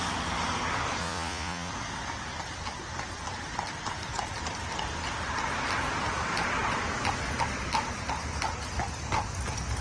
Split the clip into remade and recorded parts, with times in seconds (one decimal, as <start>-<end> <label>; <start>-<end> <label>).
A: 0.0-1.0 recorded; 1.0-1.7 remade; 1.7-9.8 recorded